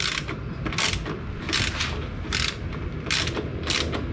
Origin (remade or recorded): recorded